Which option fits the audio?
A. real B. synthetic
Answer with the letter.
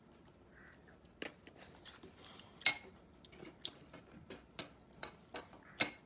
A